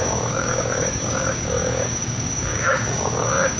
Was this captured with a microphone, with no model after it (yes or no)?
no